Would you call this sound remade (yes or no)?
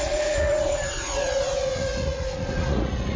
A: yes